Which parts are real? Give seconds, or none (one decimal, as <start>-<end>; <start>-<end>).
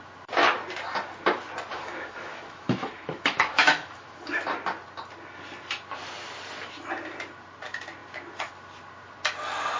0.0-1.7; 4.4-9.8